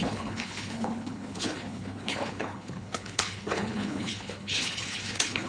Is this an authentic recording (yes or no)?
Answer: no